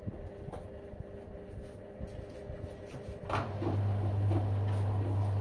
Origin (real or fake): real